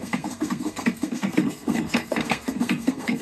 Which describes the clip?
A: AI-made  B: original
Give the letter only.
A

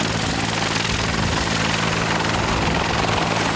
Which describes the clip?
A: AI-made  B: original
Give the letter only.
B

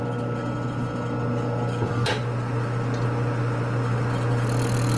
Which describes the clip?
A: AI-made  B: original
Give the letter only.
B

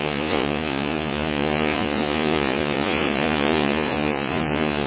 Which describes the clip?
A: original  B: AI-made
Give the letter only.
B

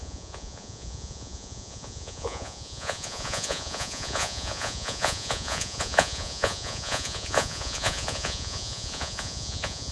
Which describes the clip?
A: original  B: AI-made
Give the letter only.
B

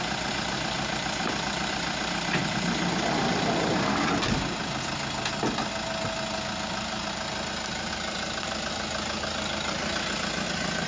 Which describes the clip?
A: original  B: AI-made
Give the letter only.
A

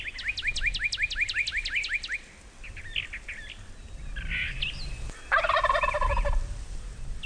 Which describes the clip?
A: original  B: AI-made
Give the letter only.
A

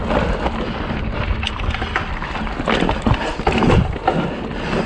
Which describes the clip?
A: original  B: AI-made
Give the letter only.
A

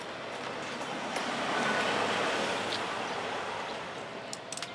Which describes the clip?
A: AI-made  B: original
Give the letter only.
B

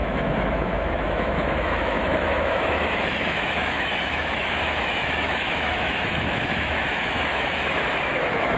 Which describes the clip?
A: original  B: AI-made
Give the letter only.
B